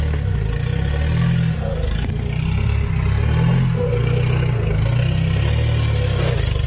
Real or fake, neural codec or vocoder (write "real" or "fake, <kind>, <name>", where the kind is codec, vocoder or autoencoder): real